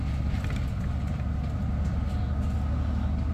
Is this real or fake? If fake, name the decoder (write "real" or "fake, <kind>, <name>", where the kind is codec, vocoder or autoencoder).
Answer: real